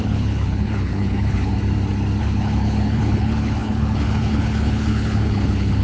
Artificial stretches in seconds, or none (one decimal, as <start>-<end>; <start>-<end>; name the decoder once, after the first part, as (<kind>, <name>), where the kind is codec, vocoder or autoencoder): 0.0-1.5 (codec, HILCodec); 2.2-5.8